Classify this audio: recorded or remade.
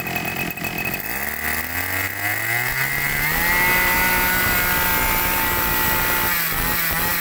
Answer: recorded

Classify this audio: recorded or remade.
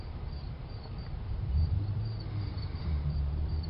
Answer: remade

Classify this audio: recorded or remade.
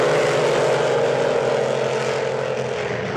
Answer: recorded